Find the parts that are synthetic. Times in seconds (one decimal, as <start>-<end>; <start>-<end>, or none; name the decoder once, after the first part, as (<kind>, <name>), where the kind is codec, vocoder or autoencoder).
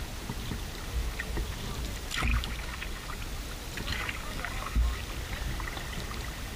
2.3-3.2 (codec, DAC); 3.9-5.0